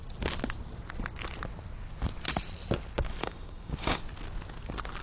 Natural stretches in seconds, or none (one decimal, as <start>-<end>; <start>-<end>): 0.0-3.2; 4.0-5.0